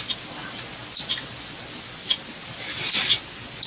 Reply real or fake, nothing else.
real